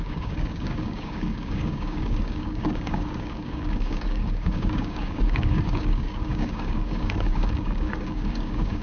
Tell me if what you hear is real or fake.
fake